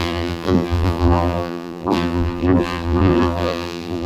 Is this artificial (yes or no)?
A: yes